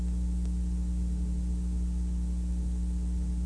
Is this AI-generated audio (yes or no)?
no